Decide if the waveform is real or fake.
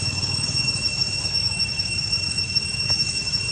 fake